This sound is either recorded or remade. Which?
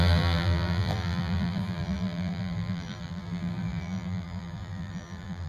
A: remade